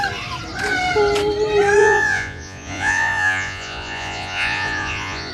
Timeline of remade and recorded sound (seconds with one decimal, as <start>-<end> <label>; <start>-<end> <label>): 0.0-1.8 recorded; 1.8-5.3 remade